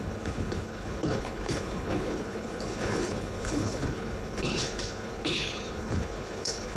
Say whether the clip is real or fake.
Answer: fake